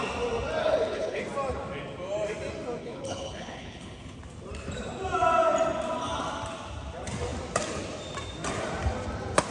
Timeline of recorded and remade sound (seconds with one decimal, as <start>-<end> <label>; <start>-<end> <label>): 0.0-0.6 recorded; 0.6-1.2 remade; 1.2-2.8 recorded; 2.8-4.2 remade; 4.2-9.5 recorded